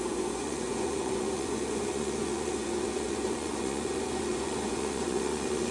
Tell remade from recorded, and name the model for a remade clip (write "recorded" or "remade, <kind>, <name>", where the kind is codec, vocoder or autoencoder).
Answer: remade, vocoder, Vocos